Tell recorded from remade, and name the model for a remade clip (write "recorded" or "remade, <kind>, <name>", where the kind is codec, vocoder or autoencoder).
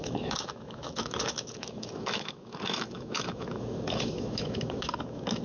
remade, autoencoder, DAC-VAE